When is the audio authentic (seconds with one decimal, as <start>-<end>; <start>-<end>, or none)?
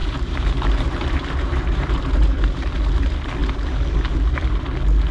2.7-5.1